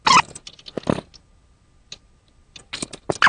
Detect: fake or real real